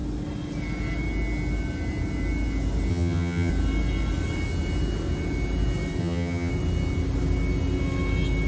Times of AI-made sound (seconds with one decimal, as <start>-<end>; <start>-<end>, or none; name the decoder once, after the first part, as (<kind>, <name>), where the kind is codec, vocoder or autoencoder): 2.9-3.5 (vocoder, HiFi-GAN); 6.0-6.5